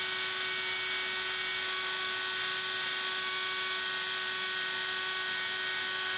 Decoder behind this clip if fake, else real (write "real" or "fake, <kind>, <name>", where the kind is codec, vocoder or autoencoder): real